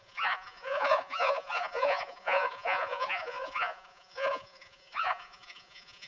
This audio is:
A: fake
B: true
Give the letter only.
A